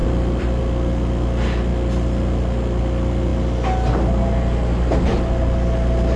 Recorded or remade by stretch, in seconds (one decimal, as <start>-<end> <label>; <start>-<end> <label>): 0.0-0.6 remade; 0.6-6.2 recorded